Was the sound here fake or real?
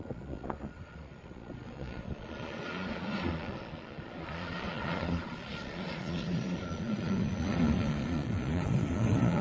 fake